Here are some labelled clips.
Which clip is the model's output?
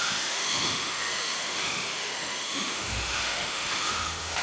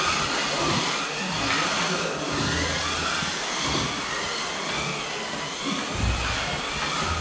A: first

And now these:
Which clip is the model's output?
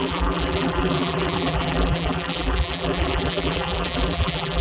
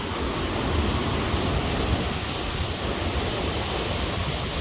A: first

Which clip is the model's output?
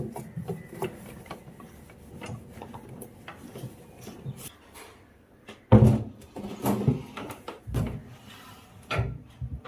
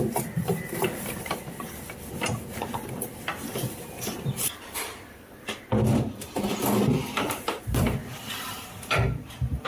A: second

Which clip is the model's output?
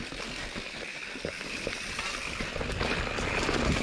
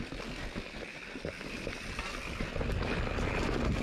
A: first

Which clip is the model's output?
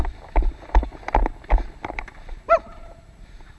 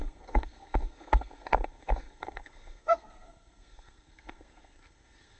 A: second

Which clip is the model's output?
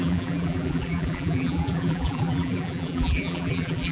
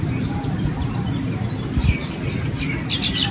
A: first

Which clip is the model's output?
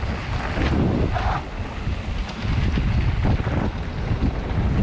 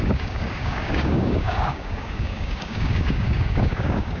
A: second